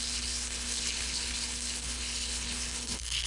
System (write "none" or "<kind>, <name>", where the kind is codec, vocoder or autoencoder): codec, HILCodec